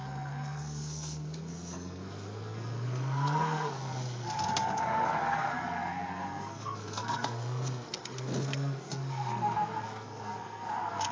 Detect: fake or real fake